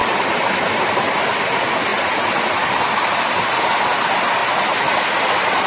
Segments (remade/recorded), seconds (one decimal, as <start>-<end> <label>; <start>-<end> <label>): 0.0-5.7 recorded